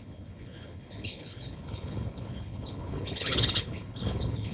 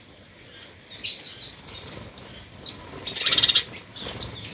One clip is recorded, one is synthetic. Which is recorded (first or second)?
second